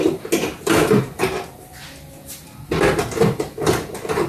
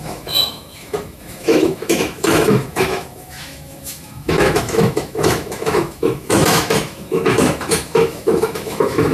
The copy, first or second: second